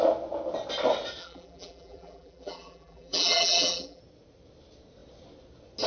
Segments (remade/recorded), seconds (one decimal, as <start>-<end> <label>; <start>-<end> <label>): 0.0-1.2 recorded; 1.2-4.0 remade; 4.0-5.9 recorded